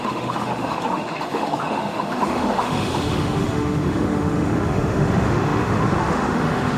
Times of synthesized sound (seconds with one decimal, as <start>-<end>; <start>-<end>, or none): 0.0-6.8